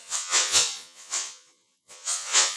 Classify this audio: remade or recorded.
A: remade